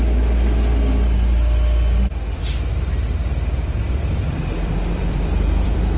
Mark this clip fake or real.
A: fake